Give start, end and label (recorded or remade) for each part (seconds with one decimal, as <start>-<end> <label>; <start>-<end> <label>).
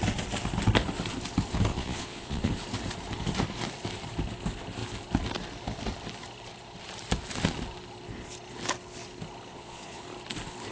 0.0-1.7 recorded; 1.7-2.5 remade; 2.5-9.5 recorded; 9.5-10.0 remade; 10.0-10.7 recorded